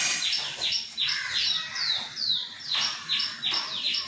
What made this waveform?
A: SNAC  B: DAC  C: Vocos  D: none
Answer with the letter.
D